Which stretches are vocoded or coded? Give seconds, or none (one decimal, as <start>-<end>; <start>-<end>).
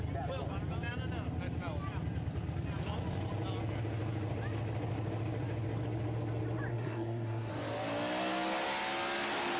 6.7-7.5